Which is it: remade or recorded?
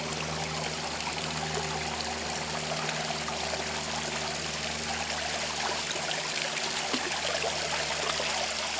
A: recorded